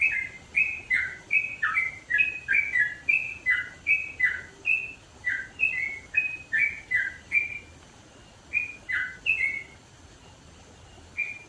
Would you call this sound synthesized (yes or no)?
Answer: no